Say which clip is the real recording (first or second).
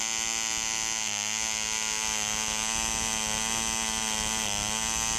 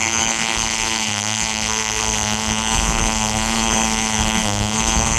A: first